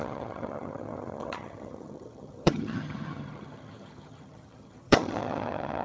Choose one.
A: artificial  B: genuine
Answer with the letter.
A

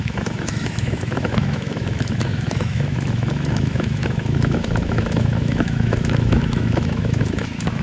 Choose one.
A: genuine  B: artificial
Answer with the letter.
B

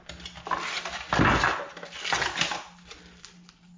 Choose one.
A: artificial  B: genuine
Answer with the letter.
B